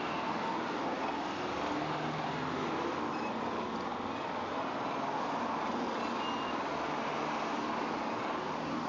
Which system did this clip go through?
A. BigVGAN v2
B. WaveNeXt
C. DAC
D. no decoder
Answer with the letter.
D